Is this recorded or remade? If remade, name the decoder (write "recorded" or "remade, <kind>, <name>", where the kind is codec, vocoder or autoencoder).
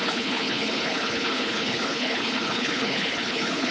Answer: remade, codec, HILCodec